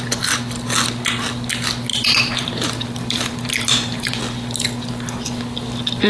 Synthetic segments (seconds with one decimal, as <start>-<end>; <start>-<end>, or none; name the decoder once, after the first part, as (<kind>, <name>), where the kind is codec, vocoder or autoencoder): 1.9-4.2 (vocoder, BigVGAN v2)